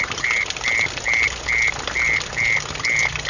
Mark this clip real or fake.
real